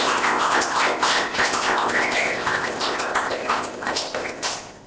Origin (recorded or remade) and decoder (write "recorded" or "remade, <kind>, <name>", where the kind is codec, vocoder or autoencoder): remade, codec, ZipCodec